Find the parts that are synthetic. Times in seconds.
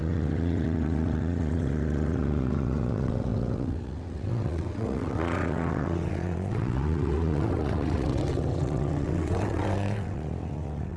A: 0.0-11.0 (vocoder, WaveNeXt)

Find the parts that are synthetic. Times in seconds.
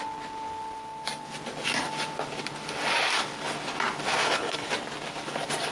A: 4.2-4.7 (codec, HILCodec)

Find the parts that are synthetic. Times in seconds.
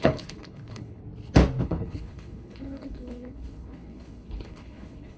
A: 0.0-1.0 (codec, HILCodec); 1.6-5.2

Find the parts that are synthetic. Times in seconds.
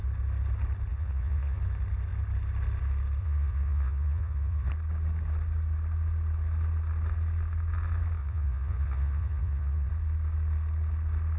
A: 0.9-1.6 (vocoder, Vocos); 3.2-4.7; 8.2-9.9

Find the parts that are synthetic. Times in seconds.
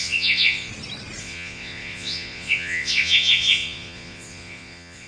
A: 0.0-0.7 (vocoder, Vocos); 1.2-5.1